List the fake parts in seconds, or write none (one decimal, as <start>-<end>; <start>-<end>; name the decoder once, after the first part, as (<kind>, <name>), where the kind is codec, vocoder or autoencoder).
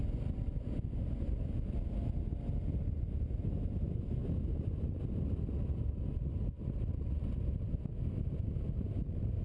6.9-8.6 (vocoder, BigVGAN v2)